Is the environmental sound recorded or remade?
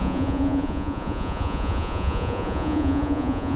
remade